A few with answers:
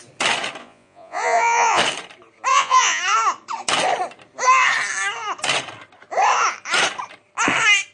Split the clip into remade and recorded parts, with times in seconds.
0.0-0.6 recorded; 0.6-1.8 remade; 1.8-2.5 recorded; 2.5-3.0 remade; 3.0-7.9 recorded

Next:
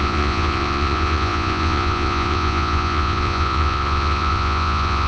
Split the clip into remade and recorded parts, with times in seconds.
0.0-5.1 remade

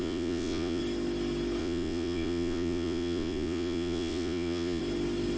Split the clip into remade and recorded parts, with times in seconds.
0.0-0.8 remade; 0.8-1.6 recorded; 1.6-4.8 remade; 4.8-5.4 recorded

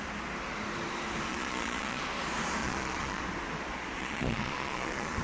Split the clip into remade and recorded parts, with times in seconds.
0.0-1.3 recorded; 1.3-2.0 remade; 2.0-2.6 recorded; 2.6-3.2 remade; 3.2-4.0 recorded; 4.0-5.2 remade

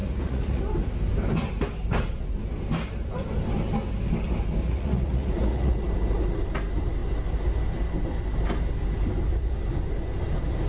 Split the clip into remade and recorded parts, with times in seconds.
0.0-0.6 remade; 0.6-4.6 recorded; 4.6-5.8 remade; 5.8-10.7 recorded

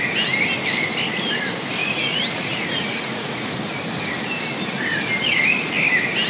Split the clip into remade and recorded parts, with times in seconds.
0.0-1.8 recorded; 1.8-3.5 remade; 3.5-6.3 recorded

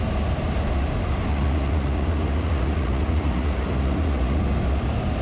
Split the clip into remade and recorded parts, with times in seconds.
0.0-1.3 recorded; 1.3-4.4 remade; 4.4-5.2 recorded